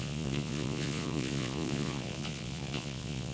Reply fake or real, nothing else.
fake